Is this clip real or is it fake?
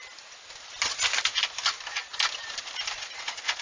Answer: real